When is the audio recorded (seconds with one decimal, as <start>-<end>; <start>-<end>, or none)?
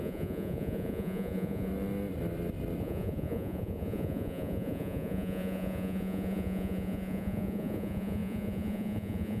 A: 1.7-2.8